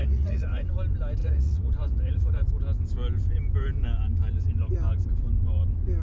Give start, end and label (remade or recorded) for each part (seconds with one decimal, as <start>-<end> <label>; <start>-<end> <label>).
0.0-0.6 remade; 0.6-1.2 recorded; 1.2-2.5 remade; 2.5-6.0 recorded